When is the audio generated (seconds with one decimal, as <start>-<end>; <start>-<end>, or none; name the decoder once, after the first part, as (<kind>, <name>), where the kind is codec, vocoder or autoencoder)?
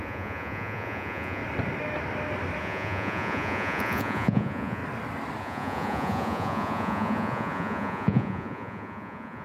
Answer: 0.0-1.4 (vocoder, Vocos); 2.6-4.8; 5.4-9.4